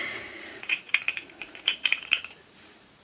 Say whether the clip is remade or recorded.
remade